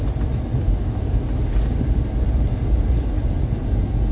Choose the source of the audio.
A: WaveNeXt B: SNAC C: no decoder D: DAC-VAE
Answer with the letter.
C